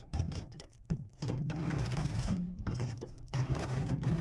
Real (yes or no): no